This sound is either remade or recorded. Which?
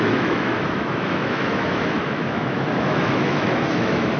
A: remade